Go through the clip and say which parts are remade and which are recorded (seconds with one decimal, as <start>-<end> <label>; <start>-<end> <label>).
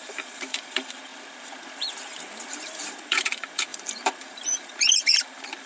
0.0-1.1 remade; 1.1-2.5 recorded; 2.5-5.7 remade